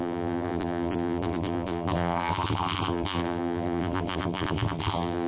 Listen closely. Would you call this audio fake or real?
fake